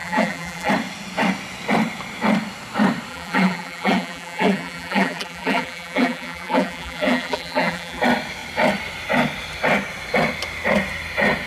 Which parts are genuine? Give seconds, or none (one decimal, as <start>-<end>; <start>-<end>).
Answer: 0.7-3.1; 8.0-11.5